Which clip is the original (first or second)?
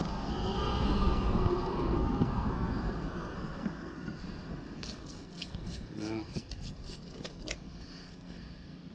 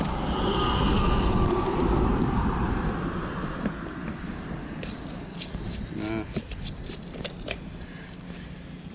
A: second